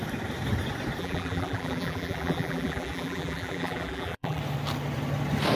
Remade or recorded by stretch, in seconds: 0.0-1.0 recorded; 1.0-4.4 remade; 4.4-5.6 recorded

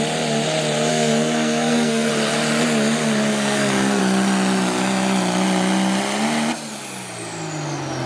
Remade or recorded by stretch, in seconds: 0.0-0.9 recorded; 0.9-2.1 remade; 2.1-3.3 recorded; 3.3-4.0 remade; 4.0-8.1 recorded

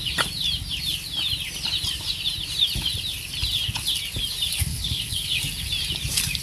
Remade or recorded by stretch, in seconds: 0.0-4.7 recorded; 4.7-5.4 remade; 5.4-6.4 recorded

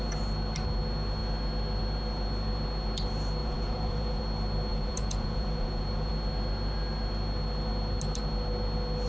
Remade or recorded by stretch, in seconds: 0.0-3.4 recorded; 3.4-4.2 remade; 4.2-4.7 recorded; 4.7-6.1 remade; 6.1-9.1 recorded

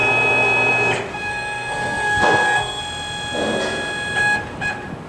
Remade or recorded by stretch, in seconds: 0.0-1.1 recorded; 1.1-2.8 remade; 2.8-5.1 recorded